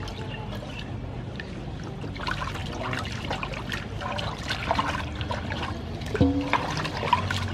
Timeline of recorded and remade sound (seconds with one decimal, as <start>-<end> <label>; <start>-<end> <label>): 0.0-7.5 recorded